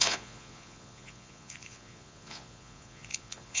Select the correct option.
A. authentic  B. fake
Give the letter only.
B